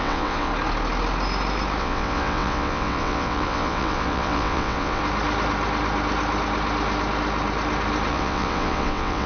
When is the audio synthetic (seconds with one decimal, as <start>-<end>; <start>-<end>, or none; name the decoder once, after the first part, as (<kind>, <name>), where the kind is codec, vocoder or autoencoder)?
0.0-0.5 (vocoder, WaveNeXt); 1.8-5.0; 8.1-9.3